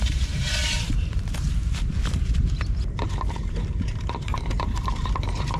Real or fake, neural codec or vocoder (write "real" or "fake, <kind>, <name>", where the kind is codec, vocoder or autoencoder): fake, vocoder, BigVGAN v2